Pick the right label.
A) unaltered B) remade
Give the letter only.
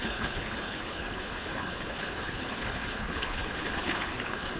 B